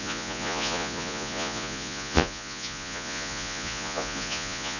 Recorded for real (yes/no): no